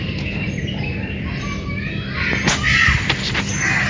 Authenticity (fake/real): real